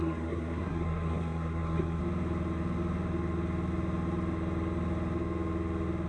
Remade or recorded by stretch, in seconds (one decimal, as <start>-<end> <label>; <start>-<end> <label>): 0.0-2.0 remade; 2.0-6.1 recorded